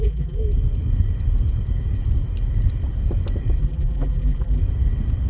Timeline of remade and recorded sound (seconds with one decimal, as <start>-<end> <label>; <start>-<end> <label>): 0.0-0.4 remade; 0.4-3.6 recorded; 3.6-4.6 remade; 4.6-5.3 recorded